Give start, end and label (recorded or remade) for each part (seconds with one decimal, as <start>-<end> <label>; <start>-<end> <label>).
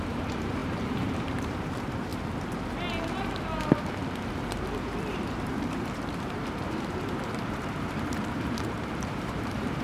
0.0-2.1 remade; 2.1-4.3 recorded; 4.3-9.8 remade